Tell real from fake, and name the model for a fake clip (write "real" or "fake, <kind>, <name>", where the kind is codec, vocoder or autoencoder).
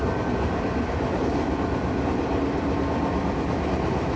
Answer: real